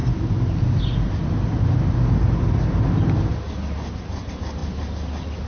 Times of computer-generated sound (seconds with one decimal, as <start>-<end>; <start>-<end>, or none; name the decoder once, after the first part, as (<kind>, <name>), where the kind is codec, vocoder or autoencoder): none